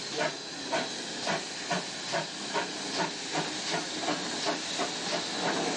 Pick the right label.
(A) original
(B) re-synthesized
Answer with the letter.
A